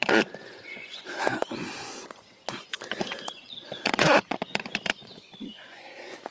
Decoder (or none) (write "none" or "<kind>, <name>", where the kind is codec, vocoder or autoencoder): vocoder, Vocos